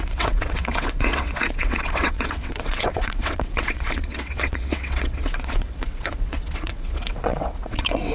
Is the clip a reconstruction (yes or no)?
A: yes